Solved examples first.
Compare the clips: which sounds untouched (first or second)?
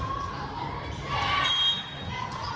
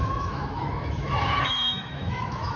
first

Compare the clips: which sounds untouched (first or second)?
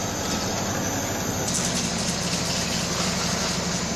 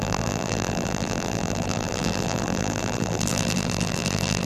first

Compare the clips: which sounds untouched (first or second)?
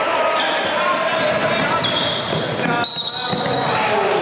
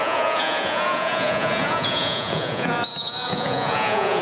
first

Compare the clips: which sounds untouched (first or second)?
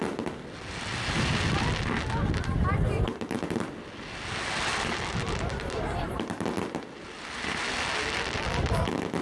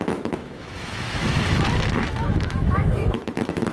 first